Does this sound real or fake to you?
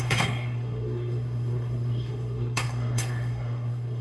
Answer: fake